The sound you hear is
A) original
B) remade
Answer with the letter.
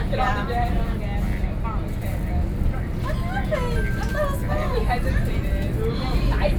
A